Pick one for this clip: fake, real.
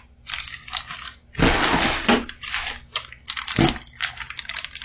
real